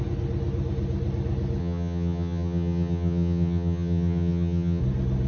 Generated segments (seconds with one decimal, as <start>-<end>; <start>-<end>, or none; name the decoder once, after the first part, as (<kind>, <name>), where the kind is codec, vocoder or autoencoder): 1.6-4.8 (vocoder, HiFi-GAN)